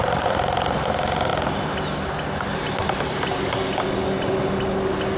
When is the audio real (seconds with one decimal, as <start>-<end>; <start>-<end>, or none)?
0.0-5.2